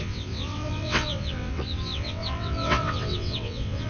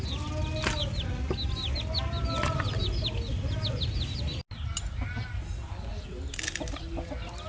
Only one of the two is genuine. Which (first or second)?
second